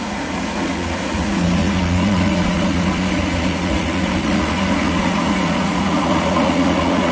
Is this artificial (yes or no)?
yes